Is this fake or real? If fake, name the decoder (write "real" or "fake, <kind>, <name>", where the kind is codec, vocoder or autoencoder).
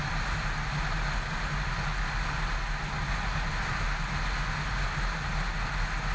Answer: real